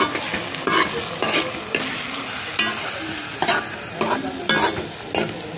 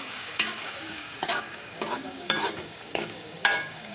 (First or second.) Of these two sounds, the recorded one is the first